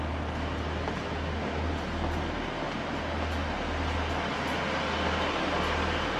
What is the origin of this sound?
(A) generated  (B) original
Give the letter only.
B